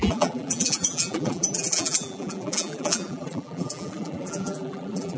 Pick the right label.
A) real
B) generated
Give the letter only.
B